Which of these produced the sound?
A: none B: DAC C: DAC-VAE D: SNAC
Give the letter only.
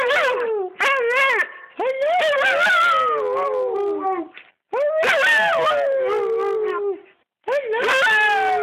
A